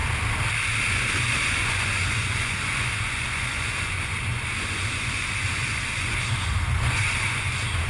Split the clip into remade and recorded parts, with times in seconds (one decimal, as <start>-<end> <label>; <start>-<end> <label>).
0.0-0.9 recorded; 0.9-7.9 remade